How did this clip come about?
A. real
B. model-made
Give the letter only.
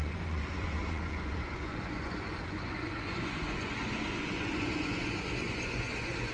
B